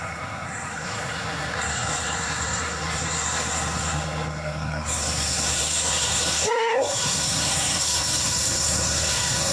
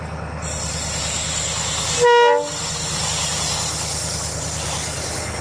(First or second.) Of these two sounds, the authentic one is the second